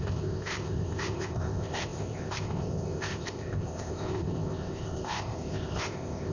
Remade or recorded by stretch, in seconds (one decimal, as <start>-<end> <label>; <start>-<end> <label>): 0.0-6.3 remade